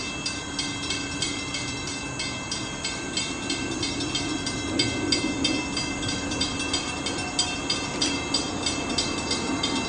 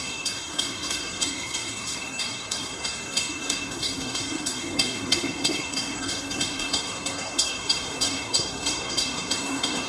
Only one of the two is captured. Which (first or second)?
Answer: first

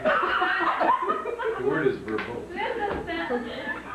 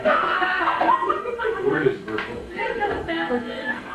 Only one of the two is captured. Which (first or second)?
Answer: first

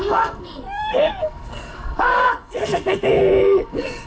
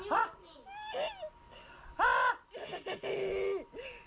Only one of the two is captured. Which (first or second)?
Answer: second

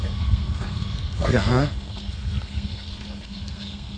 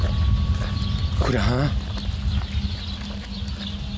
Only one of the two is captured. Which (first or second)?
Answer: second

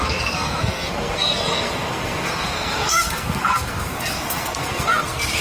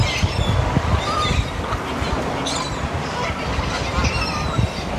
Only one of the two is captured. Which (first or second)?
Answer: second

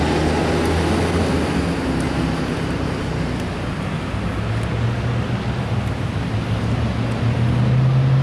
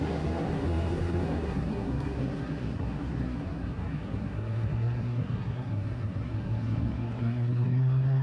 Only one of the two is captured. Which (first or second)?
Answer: first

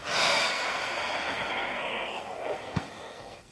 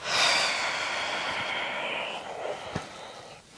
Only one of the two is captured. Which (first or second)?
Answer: second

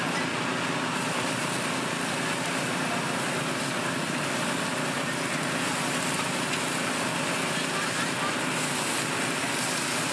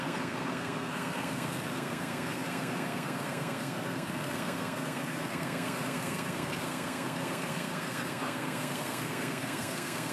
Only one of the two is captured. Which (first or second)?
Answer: first